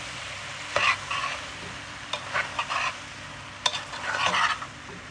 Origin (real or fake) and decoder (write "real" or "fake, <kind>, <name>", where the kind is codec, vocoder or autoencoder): real